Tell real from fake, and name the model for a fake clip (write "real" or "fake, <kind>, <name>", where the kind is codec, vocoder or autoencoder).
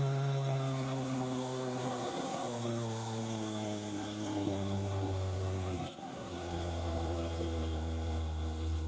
fake, codec, SNAC